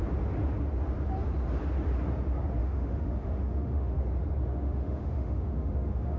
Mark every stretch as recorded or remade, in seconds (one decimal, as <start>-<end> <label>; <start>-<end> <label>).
0.0-2.6 recorded; 2.6-4.0 remade; 4.0-4.5 recorded; 4.5-6.2 remade